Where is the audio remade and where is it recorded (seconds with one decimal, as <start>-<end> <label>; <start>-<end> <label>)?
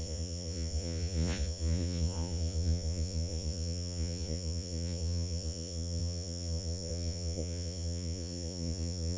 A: 0.0-9.2 remade